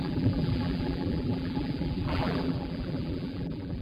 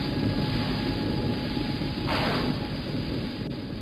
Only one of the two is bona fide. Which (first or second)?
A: second